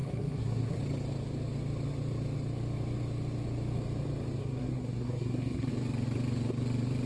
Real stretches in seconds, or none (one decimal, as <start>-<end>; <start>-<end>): 0.8-4.4; 5.7-7.1